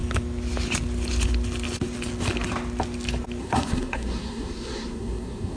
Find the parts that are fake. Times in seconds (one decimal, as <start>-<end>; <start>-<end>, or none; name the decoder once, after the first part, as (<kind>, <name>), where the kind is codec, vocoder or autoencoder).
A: 3.4-5.6 (codec, SNAC)